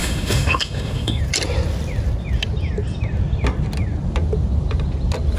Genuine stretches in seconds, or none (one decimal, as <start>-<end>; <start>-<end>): 1.2-5.4